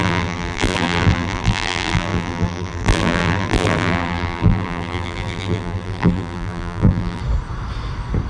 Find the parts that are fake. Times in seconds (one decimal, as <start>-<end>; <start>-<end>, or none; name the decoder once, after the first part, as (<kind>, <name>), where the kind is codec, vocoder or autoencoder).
0.0-7.2 (vocoder, BigVGAN v2)